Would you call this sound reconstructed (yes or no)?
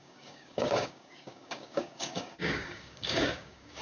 yes